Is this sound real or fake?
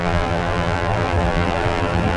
fake